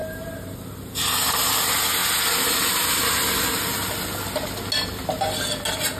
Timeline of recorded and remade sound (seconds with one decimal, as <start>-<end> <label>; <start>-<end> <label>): 0.0-0.8 remade; 0.8-6.0 recorded